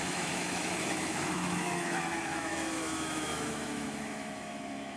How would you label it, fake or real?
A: fake